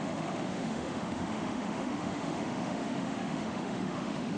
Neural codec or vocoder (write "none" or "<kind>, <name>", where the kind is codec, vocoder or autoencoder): autoencoder, DAC-VAE